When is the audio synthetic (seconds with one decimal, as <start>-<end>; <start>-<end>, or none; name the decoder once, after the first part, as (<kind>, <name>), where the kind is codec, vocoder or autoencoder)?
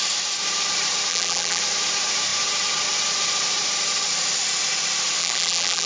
1.1-1.6 (vocoder, BigVGAN v2); 5.2-5.9